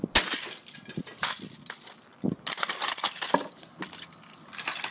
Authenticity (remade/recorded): recorded